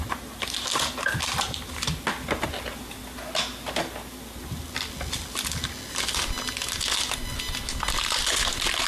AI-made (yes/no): no